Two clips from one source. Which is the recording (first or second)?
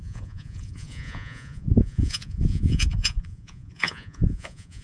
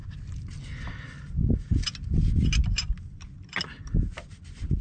second